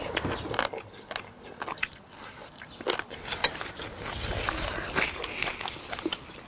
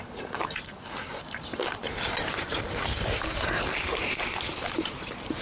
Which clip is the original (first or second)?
first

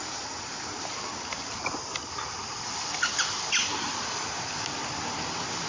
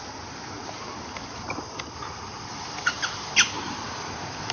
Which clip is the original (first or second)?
second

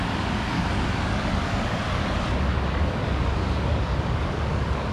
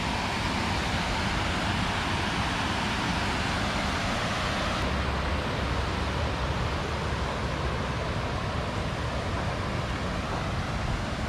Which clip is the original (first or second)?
second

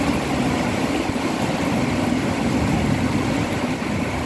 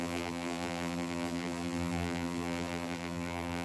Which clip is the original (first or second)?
first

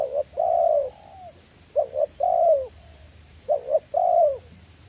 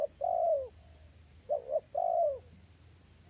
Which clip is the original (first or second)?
second